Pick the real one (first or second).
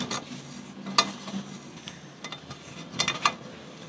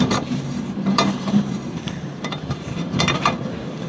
first